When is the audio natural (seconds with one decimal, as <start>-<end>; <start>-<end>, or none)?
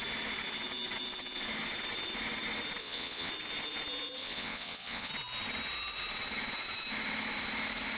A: 0.0-2.8; 3.3-4.2; 5.1-8.0